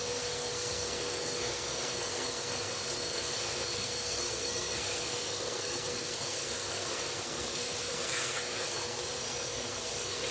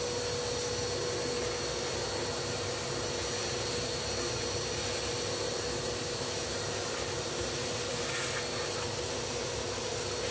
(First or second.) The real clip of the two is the second